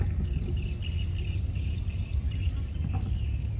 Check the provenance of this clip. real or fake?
real